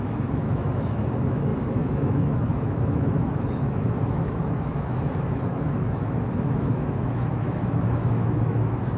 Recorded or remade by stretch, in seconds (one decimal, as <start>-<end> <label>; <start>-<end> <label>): 0.0-9.0 remade